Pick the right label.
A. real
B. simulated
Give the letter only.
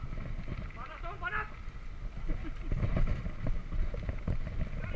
A